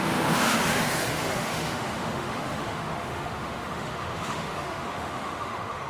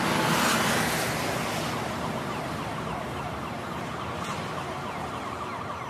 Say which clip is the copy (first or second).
first